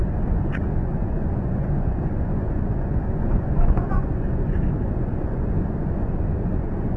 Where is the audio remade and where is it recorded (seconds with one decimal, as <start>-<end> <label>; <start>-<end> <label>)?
0.0-7.0 remade